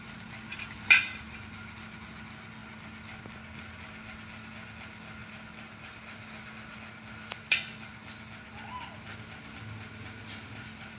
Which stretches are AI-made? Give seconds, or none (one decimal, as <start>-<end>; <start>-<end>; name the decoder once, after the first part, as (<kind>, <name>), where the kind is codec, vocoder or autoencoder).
none